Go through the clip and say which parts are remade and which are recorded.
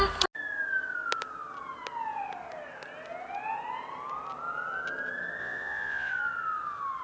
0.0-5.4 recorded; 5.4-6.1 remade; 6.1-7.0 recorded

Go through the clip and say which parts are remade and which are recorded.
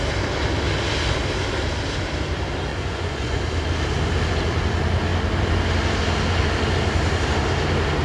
0.0-2.7 recorded; 2.7-3.4 remade; 3.4-8.0 recorded